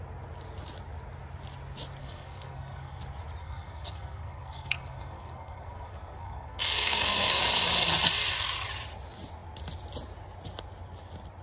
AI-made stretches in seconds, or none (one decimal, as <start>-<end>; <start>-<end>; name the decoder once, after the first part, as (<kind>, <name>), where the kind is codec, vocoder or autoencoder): 2.0-3.0 (codec, SNAC); 3.4-7.4